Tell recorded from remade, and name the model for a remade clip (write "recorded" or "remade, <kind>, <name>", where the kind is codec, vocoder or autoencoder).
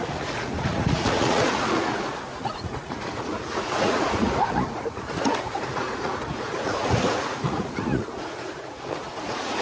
remade, vocoder, Vocos